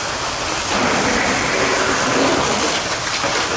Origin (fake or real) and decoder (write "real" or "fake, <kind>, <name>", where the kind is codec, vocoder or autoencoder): real